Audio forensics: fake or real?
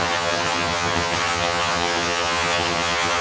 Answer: fake